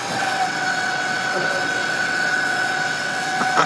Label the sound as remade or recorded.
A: remade